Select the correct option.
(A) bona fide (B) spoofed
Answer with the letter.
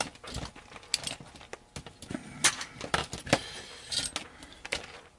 A